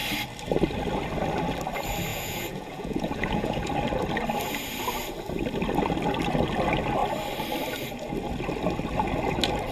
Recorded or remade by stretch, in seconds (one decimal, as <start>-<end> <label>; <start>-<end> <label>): 0.0-2.1 recorded; 2.1-3.7 remade; 3.7-9.7 recorded